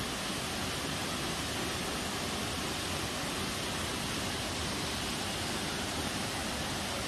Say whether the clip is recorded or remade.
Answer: recorded